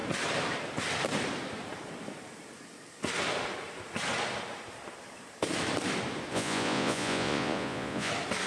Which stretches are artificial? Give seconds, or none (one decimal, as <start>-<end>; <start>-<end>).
6.3-8.1